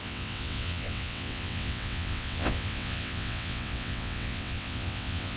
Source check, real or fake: fake